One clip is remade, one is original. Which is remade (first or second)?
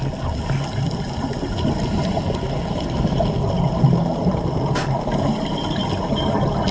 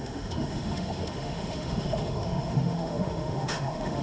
second